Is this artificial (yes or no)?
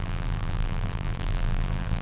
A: yes